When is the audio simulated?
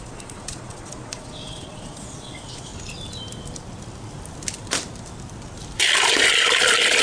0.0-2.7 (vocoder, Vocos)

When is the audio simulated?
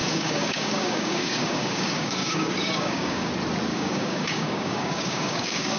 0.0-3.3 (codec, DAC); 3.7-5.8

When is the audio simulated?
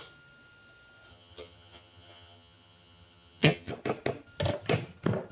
1.1-3.7 (vocoder, HiFi-GAN)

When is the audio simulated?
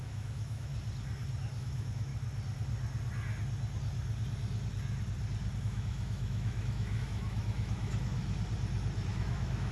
0.0-0.7 (autoencoder, DAC-VAE); 1.6-2.1; 5.6-8.2; 9.1-9.7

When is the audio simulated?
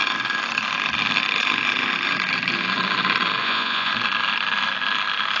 3.4-3.9 (vocoder, Vocos)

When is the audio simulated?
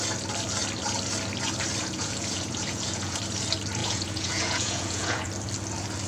1.8-3.2 (vocoder, Vocos); 3.8-5.3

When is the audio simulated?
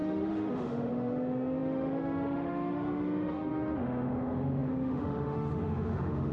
0.0-6.3 (autoencoder, DAC-VAE)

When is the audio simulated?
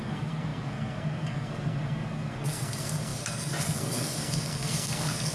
0.0-5.3 (codec, SNAC)